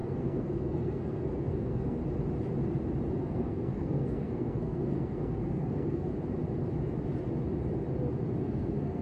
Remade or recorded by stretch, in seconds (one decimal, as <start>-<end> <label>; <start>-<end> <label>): 0.0-2.0 remade; 2.0-3.2 recorded; 3.2-6.1 remade; 6.1-8.4 recorded; 8.4-9.0 remade